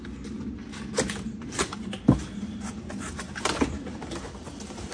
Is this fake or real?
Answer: real